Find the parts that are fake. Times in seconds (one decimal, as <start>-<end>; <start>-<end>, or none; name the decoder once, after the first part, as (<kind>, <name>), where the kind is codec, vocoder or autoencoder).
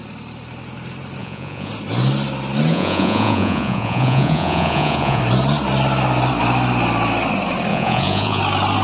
1.2-1.7 (vocoder, Vocos); 2.7-5.2; 7.7-8.4